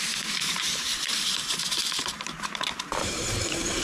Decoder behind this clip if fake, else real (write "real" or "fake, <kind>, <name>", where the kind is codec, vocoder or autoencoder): fake, vocoder, BigVGAN v2